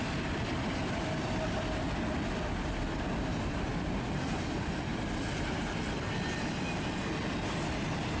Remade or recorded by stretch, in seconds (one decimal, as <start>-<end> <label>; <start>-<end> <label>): 0.0-0.8 recorded; 0.8-1.4 remade; 1.4-3.7 recorded; 3.7-6.8 remade; 6.8-8.2 recorded